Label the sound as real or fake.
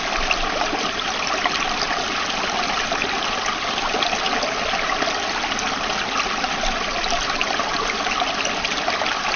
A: real